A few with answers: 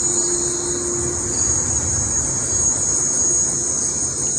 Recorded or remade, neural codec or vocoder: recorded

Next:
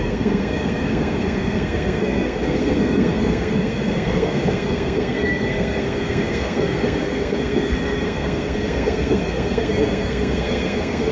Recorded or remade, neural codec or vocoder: remade, codec, SNAC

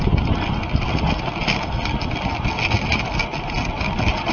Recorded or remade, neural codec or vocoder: recorded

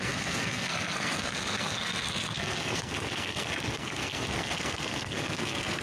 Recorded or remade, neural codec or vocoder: remade, codec, SNAC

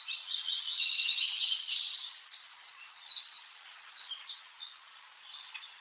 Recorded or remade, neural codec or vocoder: remade, vocoder, Vocos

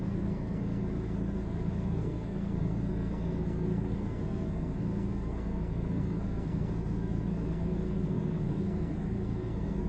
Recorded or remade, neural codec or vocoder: remade, codec, SNAC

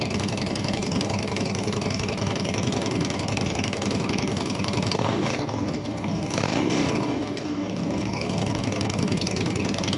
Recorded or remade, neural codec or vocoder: remade, codec, DAC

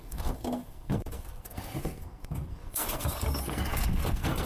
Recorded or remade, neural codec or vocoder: remade, codec, SNAC